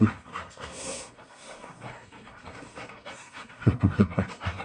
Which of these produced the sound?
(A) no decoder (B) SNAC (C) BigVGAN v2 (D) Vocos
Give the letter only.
B